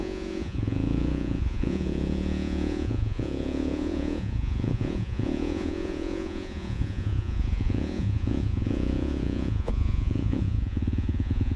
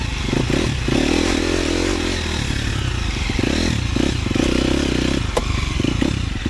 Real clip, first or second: second